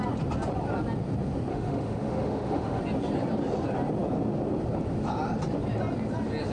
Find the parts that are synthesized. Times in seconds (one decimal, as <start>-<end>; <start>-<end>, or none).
1.5-2.8